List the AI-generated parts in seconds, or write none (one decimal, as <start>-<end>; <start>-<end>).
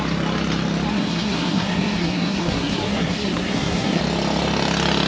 0.9-4.0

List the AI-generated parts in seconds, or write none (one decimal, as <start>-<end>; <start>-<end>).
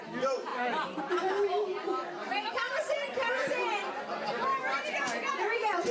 0.5-4.0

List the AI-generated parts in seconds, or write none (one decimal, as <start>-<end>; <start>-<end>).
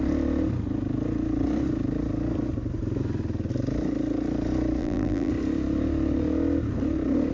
4.8-5.3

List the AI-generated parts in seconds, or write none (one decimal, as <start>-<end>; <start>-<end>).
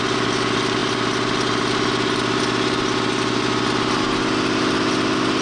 none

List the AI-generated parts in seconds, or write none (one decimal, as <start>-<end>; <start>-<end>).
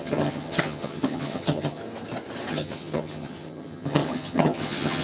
0.0-1.8; 2.5-5.0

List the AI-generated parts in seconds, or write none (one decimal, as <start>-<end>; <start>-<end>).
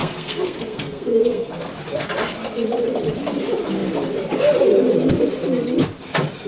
0.0-1.5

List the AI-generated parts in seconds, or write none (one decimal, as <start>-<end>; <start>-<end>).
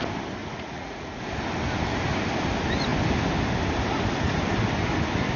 0.4-1.2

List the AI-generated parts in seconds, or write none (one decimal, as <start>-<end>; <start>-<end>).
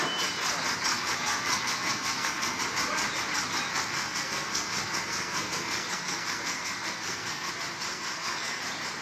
0.9-2.6; 3.7-7.5; 7.9-8.6